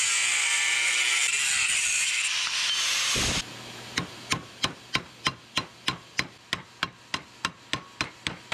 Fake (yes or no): no